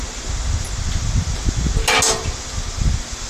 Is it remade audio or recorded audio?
recorded